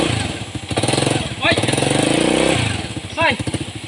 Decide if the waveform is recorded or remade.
recorded